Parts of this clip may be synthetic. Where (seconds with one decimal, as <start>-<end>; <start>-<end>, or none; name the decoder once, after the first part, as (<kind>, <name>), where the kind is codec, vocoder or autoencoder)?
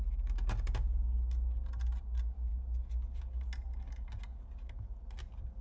none